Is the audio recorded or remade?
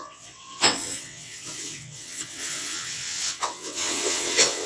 remade